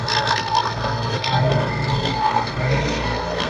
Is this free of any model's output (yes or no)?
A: no